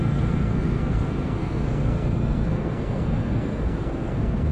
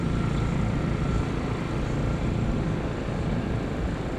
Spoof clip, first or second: first